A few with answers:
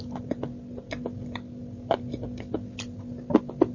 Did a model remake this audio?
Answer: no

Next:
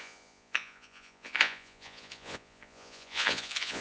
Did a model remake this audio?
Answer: yes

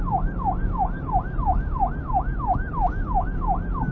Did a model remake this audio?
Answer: no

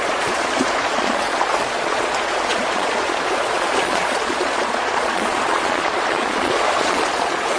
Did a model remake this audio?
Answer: yes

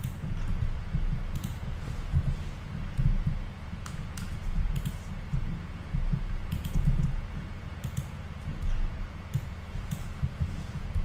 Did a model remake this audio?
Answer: yes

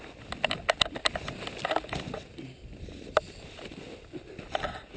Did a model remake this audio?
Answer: no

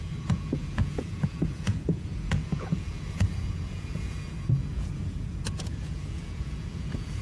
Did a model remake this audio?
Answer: yes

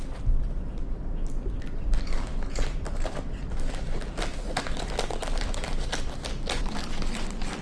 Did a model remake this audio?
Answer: no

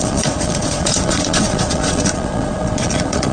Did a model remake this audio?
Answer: yes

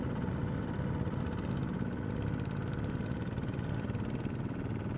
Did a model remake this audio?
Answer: no